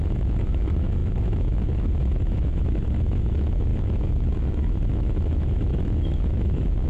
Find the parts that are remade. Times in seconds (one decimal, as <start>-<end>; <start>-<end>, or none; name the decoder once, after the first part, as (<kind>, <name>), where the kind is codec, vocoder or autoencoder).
0.0-6.9 (autoencoder, DAC-VAE)